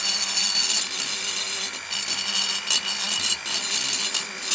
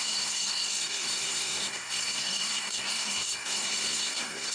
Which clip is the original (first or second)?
first